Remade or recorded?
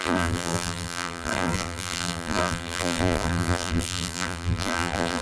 remade